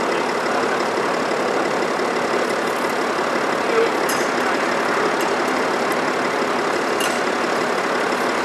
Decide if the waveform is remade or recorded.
recorded